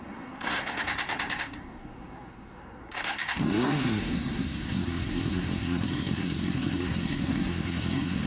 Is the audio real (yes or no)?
no